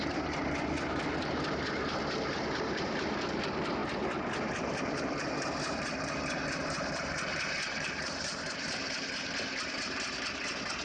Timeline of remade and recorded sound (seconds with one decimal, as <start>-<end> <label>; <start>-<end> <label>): 0.0-10.8 remade